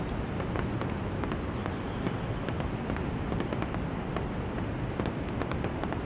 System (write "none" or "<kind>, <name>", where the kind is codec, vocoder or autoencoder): none